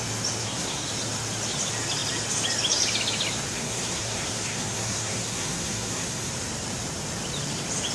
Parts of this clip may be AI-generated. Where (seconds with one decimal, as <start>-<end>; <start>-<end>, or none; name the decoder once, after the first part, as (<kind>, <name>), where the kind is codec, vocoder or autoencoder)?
0.4-0.9 (codec, SNAC); 3.5-6.3